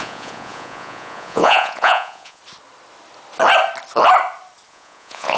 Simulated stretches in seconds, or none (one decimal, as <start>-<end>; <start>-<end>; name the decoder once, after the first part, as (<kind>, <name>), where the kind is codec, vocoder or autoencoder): 0.0-2.4 (vocoder, Vocos); 4.7-5.4